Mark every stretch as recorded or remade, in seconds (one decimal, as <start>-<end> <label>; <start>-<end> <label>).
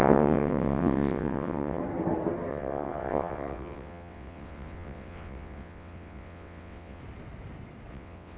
0.0-1.8 remade; 1.8-2.5 recorded; 2.5-7.0 remade; 7.0-7.9 recorded; 7.9-8.4 remade